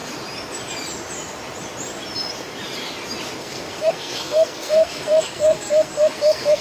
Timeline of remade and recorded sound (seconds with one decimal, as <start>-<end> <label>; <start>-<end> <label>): 0.0-3.4 recorded; 3.4-6.6 remade